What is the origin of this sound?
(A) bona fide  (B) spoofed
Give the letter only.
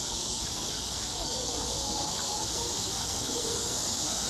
B